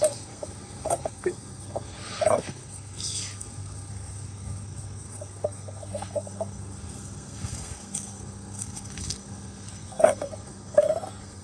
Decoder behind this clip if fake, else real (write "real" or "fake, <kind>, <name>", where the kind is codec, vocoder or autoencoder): fake, codec, SNAC